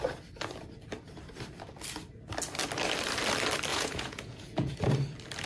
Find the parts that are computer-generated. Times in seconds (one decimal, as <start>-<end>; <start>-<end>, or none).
3.7-4.7